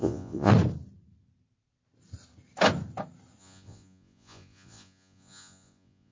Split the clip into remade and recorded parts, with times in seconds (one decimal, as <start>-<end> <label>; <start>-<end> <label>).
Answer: 0.0-0.5 remade; 0.5-3.4 recorded; 3.4-6.1 remade